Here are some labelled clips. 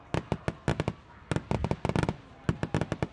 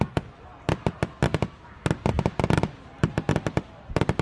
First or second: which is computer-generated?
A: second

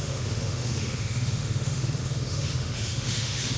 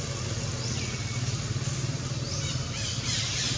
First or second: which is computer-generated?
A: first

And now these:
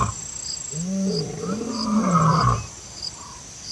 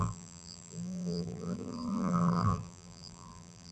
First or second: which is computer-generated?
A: second